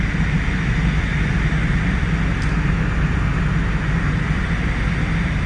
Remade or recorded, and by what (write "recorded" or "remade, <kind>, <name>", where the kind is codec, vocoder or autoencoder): recorded